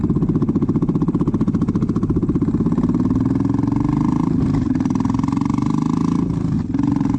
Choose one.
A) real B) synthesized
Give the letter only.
A